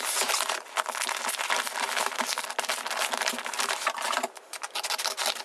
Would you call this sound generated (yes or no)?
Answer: no